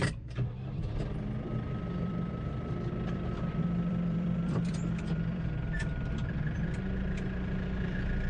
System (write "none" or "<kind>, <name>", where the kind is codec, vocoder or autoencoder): vocoder, BigVGAN v2